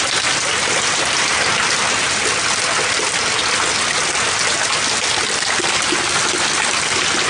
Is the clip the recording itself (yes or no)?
yes